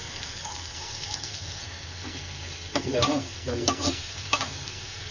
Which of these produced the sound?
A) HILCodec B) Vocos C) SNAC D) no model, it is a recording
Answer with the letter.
C